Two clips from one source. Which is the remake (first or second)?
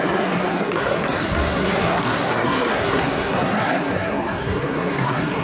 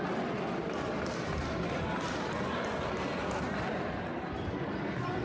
first